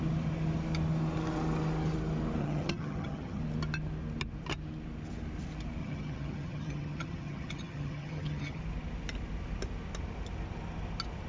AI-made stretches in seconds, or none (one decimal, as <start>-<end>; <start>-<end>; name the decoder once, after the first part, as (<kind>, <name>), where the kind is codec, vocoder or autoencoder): 2.4-3.4 (vocoder, HiFi-GAN); 5.8-8.6